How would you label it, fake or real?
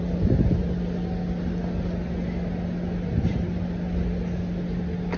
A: real